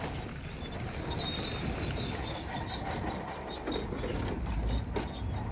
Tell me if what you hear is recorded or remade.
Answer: recorded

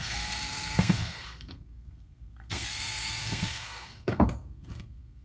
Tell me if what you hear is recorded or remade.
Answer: remade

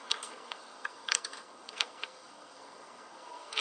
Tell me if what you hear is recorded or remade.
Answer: remade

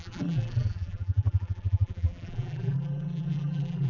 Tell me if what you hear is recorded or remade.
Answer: remade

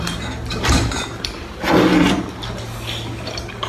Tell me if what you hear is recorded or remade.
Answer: recorded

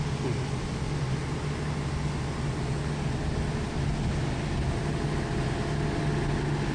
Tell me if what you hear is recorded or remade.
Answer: recorded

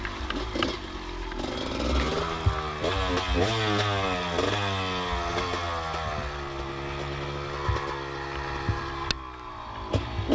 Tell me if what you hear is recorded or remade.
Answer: recorded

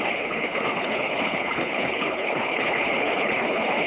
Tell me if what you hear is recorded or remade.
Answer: remade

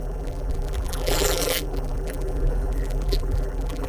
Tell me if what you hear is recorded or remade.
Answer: remade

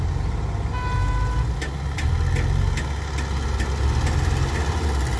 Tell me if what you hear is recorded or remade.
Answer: recorded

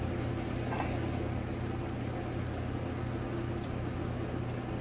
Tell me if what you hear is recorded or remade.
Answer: recorded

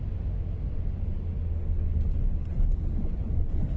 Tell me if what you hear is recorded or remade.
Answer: recorded